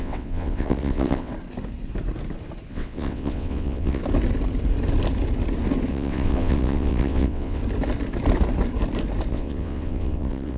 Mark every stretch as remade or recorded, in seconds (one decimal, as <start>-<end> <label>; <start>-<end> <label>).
0.0-1.3 remade; 1.3-2.7 recorded; 2.7-4.0 remade; 4.0-5.9 recorded; 5.9-7.6 remade; 7.6-9.3 recorded; 9.3-10.6 remade